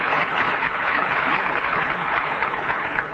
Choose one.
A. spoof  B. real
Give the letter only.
A